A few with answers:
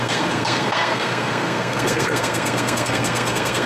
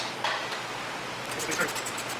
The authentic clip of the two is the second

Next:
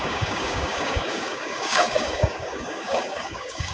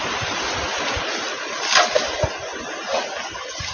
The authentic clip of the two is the second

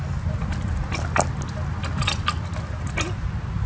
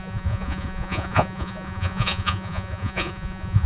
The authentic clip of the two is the first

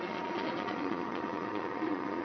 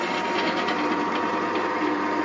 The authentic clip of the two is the second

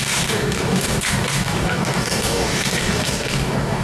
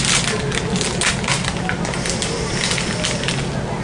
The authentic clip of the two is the second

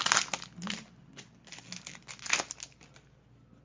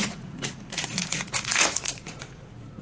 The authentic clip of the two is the first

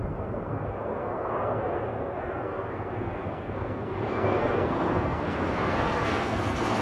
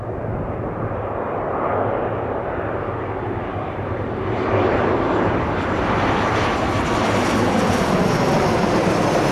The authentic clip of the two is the second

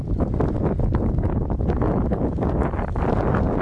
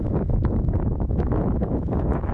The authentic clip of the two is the first